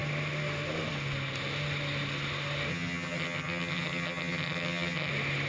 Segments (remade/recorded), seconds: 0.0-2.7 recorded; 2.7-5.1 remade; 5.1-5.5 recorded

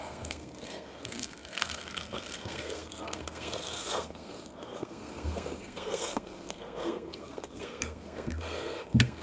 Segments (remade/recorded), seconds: 0.0-9.2 remade

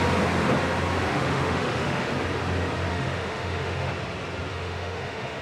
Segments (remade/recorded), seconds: 0.0-1.1 recorded; 1.1-2.1 remade; 2.1-2.9 recorded; 2.9-3.9 remade; 3.9-4.5 recorded; 4.5-5.4 remade

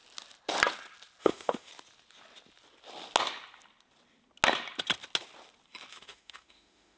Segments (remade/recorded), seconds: 0.0-1.2 recorded; 1.2-1.7 remade; 1.7-5.9 recorded; 5.9-7.0 remade

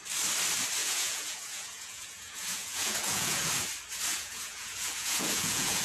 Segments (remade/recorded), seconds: 0.0-0.8 recorded; 0.8-3.5 remade; 3.5-4.1 recorded; 4.1-5.8 remade

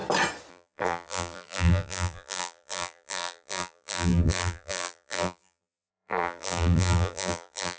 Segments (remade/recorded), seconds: 0.0-0.5 recorded; 0.5-7.8 remade